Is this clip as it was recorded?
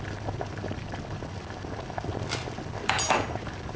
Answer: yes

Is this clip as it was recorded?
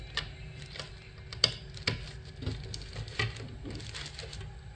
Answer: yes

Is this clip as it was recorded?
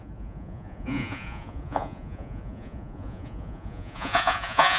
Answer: no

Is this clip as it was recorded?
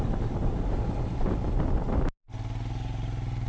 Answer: yes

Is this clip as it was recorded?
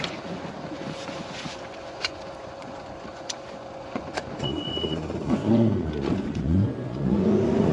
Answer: no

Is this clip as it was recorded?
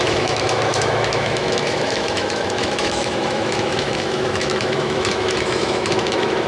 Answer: no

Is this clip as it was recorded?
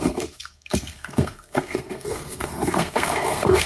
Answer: no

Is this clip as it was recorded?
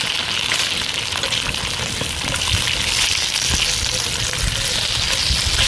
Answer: yes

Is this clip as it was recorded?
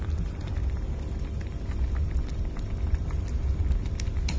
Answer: yes